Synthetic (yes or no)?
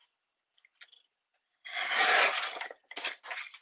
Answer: no